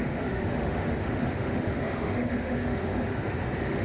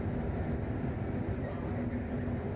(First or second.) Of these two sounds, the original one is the second